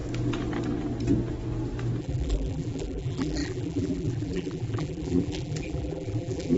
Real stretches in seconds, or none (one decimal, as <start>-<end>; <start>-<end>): 0.0-2.0